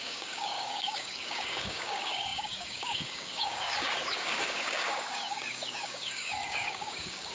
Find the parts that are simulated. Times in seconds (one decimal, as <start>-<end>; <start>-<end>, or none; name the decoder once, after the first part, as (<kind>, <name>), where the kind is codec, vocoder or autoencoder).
0.0-7.3 (codec, DAC)